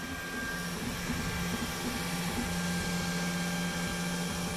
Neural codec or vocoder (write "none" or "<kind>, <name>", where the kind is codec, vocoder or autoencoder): none